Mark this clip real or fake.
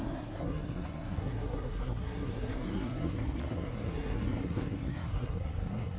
fake